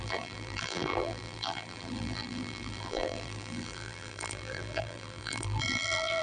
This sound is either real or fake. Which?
fake